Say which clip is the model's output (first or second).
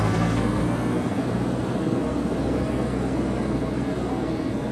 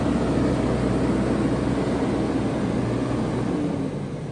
first